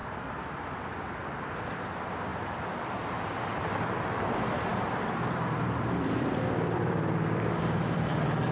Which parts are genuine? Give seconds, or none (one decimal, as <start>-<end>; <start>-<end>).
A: 0.0-2.3; 3.1-4.7